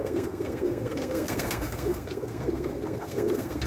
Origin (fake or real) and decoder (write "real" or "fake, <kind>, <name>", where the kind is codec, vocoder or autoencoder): fake, codec, SNAC